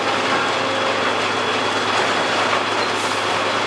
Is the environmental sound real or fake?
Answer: real